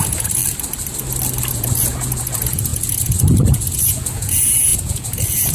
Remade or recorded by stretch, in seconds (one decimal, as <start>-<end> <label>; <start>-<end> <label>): 0.0-0.4 remade; 0.4-1.5 recorded; 1.5-5.5 remade